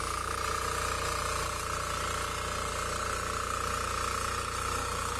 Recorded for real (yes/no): yes